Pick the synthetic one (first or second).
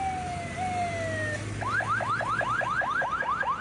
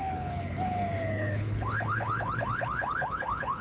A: second